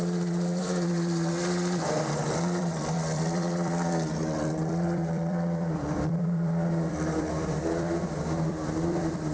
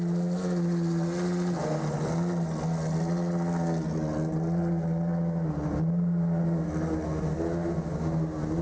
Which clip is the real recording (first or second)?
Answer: second